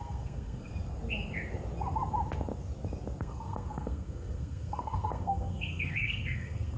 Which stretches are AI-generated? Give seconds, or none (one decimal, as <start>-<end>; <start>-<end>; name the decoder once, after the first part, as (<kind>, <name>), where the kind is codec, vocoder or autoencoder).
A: 0.0-0.7 (codec, SNAC); 3.2-6.8